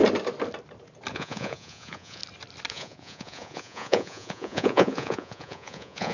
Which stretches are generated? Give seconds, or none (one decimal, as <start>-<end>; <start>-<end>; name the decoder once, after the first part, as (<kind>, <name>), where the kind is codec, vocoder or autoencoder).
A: 1.1-2.2 (vocoder, Vocos); 2.7-6.1